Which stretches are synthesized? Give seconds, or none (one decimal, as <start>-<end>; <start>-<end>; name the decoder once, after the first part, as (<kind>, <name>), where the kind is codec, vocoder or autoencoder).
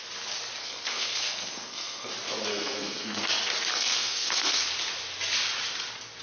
0.6-2.1 (codec, SNAC); 2.5-3.2; 3.7-4.6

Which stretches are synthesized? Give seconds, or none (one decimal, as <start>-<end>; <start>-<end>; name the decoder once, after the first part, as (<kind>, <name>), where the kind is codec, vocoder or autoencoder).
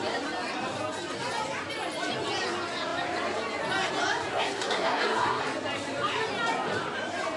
4.3-5.4 (codec, SNAC)